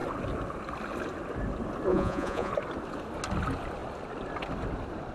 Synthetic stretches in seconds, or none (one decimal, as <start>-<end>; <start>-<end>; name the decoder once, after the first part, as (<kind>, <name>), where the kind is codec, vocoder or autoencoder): 1.9-2.5 (vocoder, Vocos)